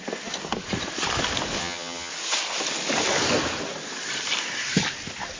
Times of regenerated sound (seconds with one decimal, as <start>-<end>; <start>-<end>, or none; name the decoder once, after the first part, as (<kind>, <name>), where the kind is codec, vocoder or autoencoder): 1.6-2.1 (vocoder, HiFi-GAN)